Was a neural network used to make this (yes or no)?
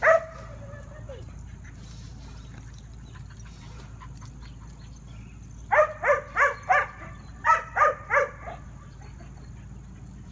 no